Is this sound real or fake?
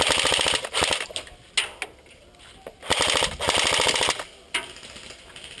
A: real